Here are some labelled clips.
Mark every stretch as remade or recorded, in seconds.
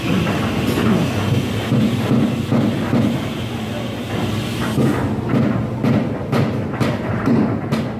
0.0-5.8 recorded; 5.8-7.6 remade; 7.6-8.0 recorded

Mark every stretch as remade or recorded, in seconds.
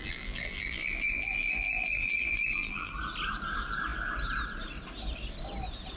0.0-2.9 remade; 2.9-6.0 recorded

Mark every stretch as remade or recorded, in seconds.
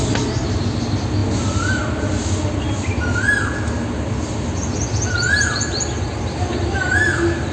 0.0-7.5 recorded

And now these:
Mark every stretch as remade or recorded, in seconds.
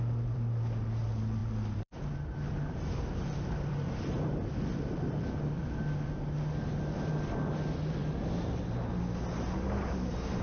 0.0-5.6 remade; 5.6-7.1 recorded; 7.1-8.0 remade; 8.0-9.0 recorded; 9.0-10.4 remade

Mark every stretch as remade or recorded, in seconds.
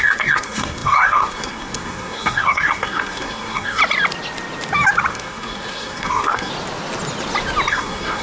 0.0-3.8 remade; 3.8-5.1 recorded; 5.1-6.5 remade; 6.5-7.7 recorded; 7.7-8.2 remade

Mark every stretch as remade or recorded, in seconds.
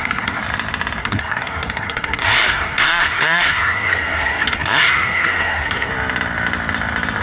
0.0-0.4 remade; 0.4-1.0 recorded; 1.0-5.9 remade; 5.9-7.2 recorded